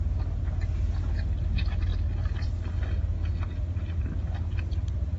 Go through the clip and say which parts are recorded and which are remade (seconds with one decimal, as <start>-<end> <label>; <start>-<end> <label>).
0.0-5.2 recorded